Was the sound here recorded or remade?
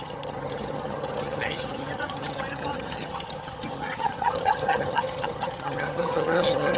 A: remade